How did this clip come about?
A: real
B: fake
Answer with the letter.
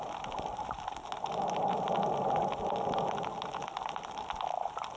A